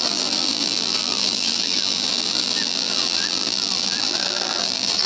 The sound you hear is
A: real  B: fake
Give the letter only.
B